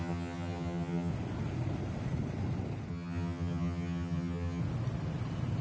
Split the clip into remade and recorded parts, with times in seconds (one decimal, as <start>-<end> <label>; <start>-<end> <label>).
0.0-1.1 remade; 1.1-2.9 recorded; 2.9-4.6 remade; 4.6-5.6 recorded